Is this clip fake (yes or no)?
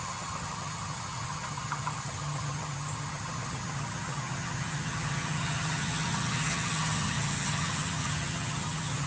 yes